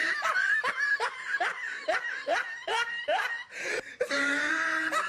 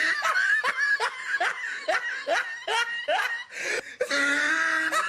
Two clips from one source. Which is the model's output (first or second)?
first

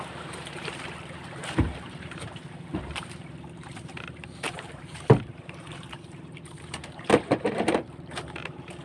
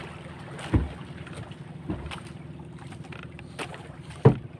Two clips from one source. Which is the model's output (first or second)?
first